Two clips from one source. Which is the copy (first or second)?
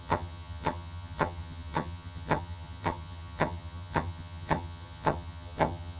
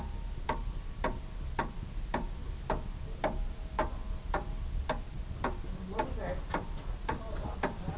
first